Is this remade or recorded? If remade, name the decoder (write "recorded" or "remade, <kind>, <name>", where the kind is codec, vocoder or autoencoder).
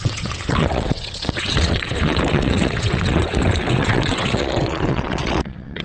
remade, vocoder, WaveNeXt